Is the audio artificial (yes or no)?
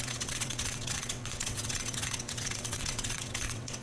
yes